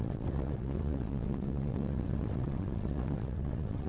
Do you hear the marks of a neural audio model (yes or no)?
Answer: yes